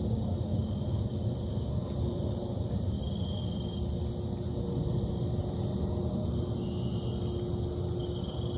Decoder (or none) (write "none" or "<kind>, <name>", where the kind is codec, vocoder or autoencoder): none